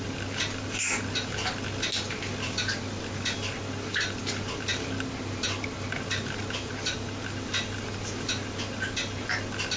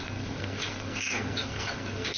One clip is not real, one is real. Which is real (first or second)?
first